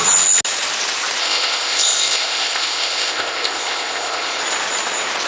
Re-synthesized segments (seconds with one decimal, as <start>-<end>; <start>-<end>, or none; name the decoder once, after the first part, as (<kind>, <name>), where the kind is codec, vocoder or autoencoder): 1.2-4.4 (codec, ZipCodec)